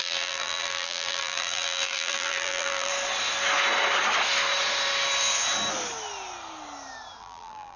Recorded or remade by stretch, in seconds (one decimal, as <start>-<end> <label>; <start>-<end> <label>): 0.0-2.9 remade; 2.9-7.2 recorded; 7.2-7.8 remade